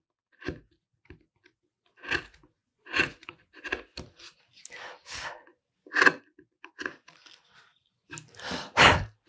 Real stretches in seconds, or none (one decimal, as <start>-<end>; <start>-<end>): 0.0-2.6; 3.5-9.3